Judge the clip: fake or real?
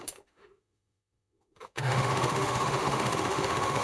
fake